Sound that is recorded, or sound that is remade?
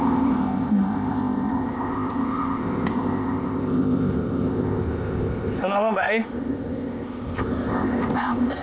remade